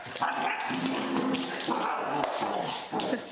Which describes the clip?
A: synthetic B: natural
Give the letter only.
B